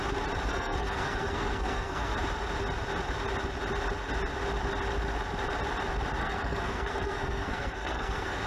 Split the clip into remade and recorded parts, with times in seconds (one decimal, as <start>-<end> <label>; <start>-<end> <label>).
0.0-0.5 recorded; 0.5-2.1 remade; 2.1-6.2 recorded; 6.2-8.5 remade